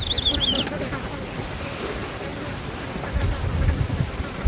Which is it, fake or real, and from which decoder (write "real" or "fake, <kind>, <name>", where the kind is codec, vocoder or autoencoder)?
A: real